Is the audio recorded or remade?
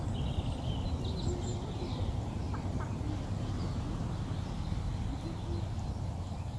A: recorded